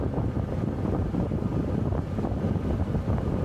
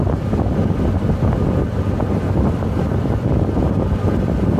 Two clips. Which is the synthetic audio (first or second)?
first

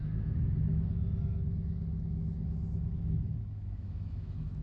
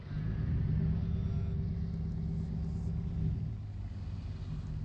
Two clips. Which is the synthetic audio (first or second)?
first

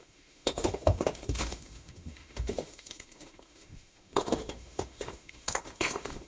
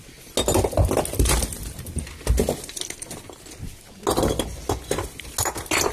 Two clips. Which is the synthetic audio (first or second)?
first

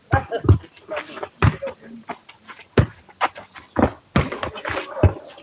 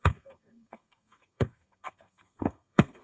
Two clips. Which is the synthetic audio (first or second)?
second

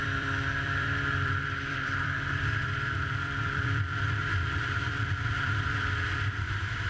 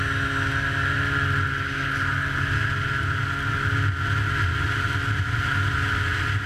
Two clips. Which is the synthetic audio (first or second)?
first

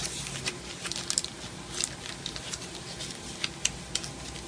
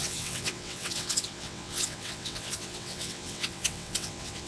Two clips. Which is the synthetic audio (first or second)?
second